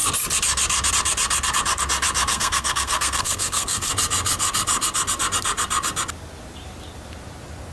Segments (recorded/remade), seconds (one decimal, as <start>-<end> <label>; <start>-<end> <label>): 0.0-2.3 recorded; 2.3-3.9 remade; 3.9-7.7 recorded